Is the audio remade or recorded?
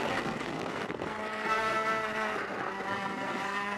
remade